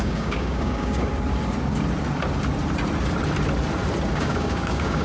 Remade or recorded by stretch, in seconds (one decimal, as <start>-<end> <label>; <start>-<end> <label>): 0.0-1.1 remade; 1.1-4.1 recorded; 4.1-5.0 remade